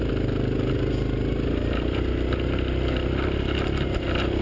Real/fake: real